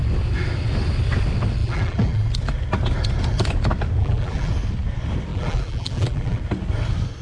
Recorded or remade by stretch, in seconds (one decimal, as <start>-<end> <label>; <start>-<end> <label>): 0.0-1.6 recorded; 1.6-2.3 remade; 2.3-4.0 recorded; 4.0-4.5 remade; 4.5-5.3 recorded; 5.3-6.4 remade; 6.4-7.2 recorded